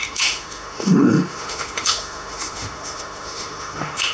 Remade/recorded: remade